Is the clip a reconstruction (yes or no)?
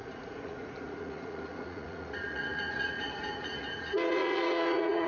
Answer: yes